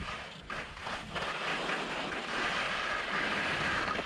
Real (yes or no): yes